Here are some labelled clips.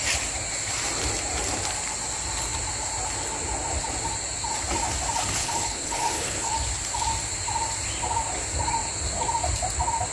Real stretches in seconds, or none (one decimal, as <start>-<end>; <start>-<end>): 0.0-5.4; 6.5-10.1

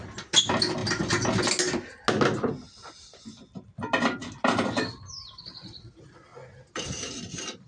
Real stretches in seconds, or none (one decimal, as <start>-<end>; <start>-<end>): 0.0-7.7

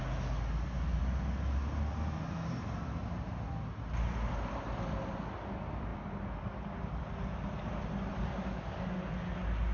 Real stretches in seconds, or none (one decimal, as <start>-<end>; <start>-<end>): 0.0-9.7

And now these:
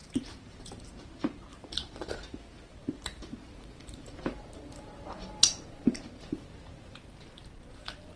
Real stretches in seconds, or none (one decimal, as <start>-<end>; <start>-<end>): 1.1-1.5; 6.4-8.2